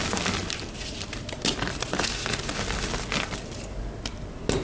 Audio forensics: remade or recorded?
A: recorded